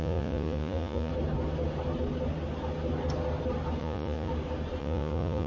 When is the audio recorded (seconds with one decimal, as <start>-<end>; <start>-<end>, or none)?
1.1-3.8; 4.3-4.8